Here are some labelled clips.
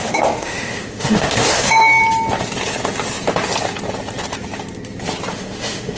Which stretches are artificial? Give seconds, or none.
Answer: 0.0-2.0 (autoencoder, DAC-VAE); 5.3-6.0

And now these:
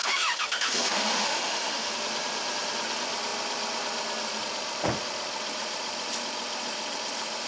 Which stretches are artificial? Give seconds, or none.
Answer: 0.0-1.9 (autoencoder, DAC-VAE)

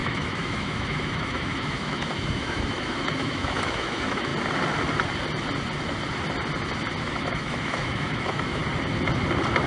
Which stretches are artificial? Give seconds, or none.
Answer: 0.0-4.3 (autoencoder, DAC-VAE); 7.0-8.6

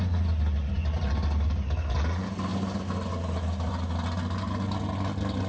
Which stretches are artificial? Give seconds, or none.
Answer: none

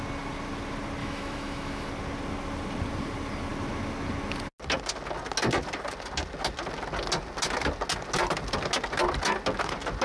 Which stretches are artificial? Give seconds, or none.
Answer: 1.0-1.9 (autoencoder, DAC-VAE)

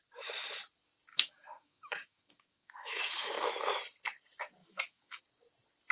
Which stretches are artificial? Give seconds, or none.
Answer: 1.1-3.7 (autoencoder, DAC-VAE); 4.6-5.2